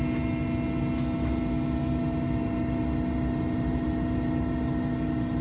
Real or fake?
real